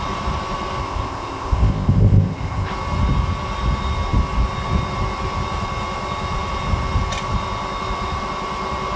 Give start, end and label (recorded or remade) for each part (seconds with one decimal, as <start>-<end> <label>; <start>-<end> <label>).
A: 0.0-0.8 recorded; 0.8-2.7 remade; 2.7-9.0 recorded